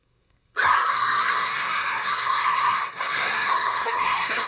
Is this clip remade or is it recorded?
remade